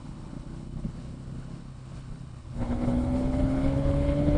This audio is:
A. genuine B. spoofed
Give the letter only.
B